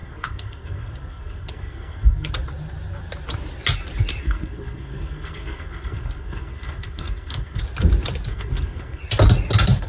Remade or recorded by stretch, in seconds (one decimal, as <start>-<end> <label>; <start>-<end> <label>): 0.0-2.3 remade; 2.3-4.2 recorded; 4.2-7.6 remade; 7.6-8.3 recorded; 8.3-9.0 remade; 9.0-9.9 recorded